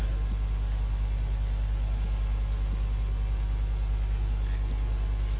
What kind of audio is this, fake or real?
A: real